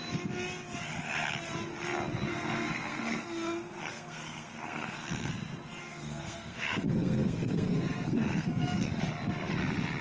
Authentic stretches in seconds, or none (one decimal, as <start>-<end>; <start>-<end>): 0.0-2.3; 5.3-5.8; 9.0-10.0

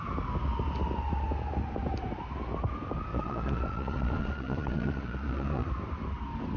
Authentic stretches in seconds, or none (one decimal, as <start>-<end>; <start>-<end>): 0.0-3.1; 5.7-6.6

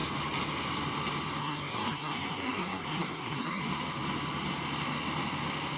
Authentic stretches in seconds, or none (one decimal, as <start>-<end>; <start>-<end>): 0.0-1.4; 3.6-5.8

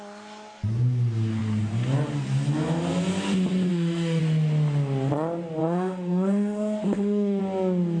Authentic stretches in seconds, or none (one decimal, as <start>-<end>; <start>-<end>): 0.0-3.7; 4.2-5.6; 7.4-8.0